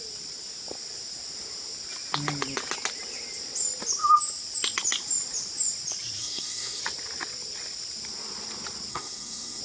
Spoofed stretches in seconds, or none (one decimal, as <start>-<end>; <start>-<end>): 6.2-6.8; 8.9-9.6